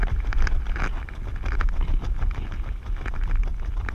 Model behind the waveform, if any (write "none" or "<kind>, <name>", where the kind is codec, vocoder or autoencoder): none